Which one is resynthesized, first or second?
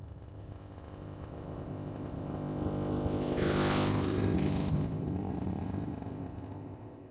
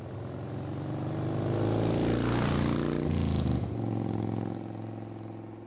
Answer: first